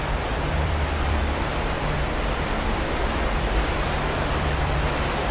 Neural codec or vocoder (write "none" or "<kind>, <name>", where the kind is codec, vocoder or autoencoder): vocoder, BigVGAN v2